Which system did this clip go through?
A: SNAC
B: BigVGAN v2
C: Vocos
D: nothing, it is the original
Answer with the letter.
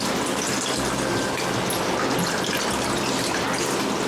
D